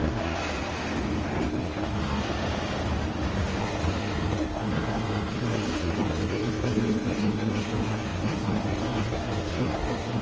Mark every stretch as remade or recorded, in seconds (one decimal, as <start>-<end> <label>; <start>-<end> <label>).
0.0-0.4 remade; 0.4-1.5 recorded; 1.5-2.2 remade; 2.2-3.6 recorded; 3.6-10.2 remade